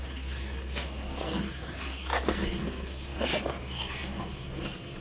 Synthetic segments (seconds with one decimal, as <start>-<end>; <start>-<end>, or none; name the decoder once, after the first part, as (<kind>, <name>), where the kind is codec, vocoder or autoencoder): 0.0-5.0 (codec, SNAC)